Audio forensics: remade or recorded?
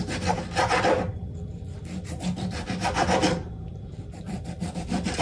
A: remade